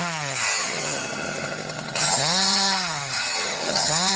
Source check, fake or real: fake